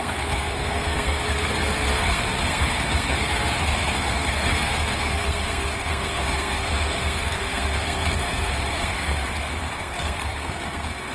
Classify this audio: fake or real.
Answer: fake